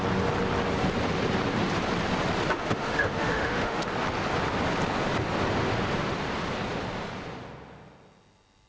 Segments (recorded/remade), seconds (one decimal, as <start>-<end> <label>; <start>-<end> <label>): 0.0-2.5 recorded; 2.5-3.9 remade; 3.9-8.7 recorded